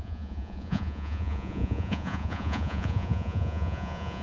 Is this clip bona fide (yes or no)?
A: no